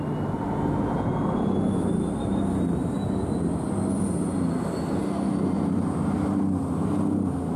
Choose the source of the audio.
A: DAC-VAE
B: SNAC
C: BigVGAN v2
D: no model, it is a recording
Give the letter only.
D